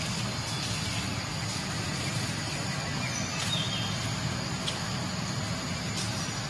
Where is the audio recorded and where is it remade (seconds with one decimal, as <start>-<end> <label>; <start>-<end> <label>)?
0.0-6.5 recorded